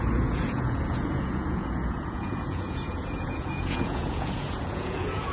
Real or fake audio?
fake